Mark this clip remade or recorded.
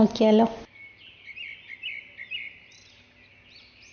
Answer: recorded